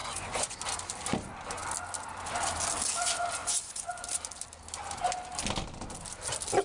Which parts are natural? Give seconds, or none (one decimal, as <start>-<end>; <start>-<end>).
0.6-3.4; 3.9-6.6

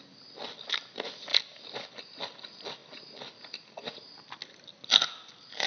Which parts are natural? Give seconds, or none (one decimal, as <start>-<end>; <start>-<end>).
0.0-5.7

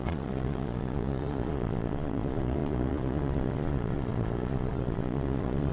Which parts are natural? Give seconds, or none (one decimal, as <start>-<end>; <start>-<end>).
none

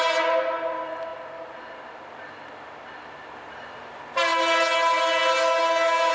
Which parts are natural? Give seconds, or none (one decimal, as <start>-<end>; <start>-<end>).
0.0-6.1

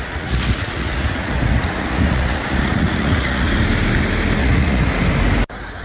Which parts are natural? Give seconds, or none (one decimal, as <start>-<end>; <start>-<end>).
3.5-4.4; 4.9-5.8

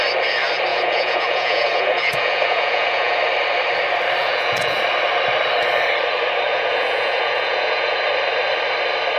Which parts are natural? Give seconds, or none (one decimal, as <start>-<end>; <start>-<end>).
0.0-0.7; 3.2-4.2; 4.8-6.5; 8.0-9.2